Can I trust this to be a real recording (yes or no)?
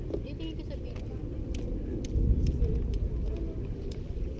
yes